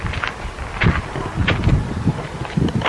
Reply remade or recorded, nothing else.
recorded